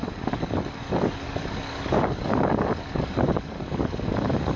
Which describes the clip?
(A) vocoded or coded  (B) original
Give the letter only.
A